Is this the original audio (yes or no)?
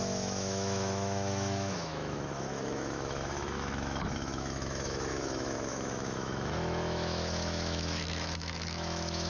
no